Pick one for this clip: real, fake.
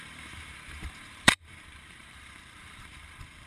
fake